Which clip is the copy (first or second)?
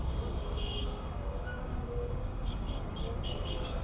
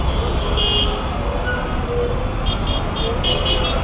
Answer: first